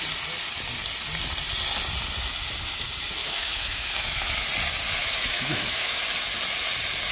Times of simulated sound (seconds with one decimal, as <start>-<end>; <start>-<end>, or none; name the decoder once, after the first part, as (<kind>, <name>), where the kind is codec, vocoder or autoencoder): 3.2-4.3 (autoencoder, DAC-VAE); 5.0-6.0